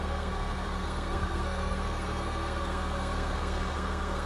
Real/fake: fake